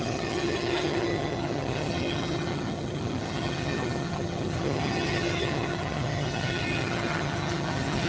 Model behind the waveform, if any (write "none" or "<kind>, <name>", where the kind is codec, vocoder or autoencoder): vocoder, HiFi-GAN